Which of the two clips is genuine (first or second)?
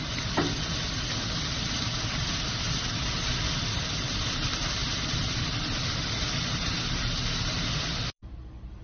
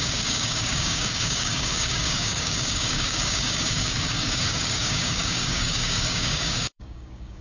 first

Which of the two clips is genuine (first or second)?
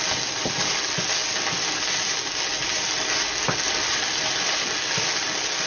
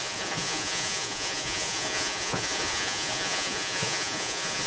first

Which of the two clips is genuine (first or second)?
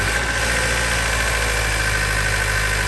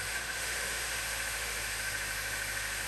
first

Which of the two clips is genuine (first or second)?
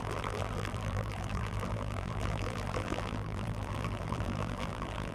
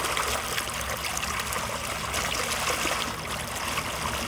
second